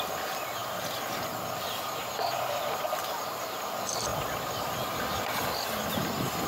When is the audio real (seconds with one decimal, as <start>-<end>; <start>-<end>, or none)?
0.0-4.1; 5.0-6.5